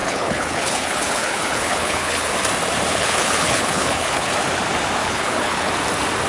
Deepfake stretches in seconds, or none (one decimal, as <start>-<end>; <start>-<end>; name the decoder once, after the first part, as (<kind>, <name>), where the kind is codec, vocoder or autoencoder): 0.0-2.3 (codec, HILCodec); 2.9-4.3; 5.0-5.7